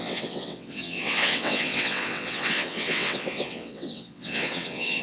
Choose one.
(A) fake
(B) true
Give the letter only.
A